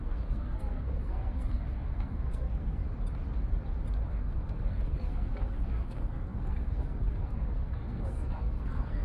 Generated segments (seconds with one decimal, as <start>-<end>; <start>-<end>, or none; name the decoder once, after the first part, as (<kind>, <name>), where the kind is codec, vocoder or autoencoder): 0.0-2.8 (codec, SNAC); 4.1-9.0